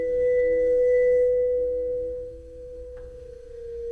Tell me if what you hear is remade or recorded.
remade